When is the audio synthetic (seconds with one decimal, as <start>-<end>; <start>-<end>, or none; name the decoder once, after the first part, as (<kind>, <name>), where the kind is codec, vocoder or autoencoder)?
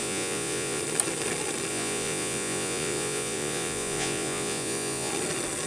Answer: 0.0-0.8 (vocoder, Vocos); 1.7-5.1